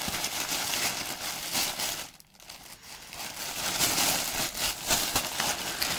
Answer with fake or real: real